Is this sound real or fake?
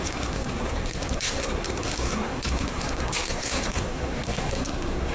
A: fake